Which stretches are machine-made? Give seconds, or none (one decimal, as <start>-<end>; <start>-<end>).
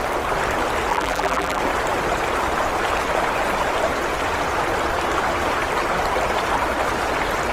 0.9-1.6